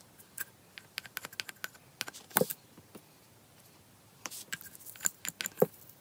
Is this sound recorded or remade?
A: recorded